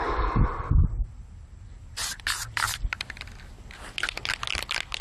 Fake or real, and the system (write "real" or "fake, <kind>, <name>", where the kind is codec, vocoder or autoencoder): real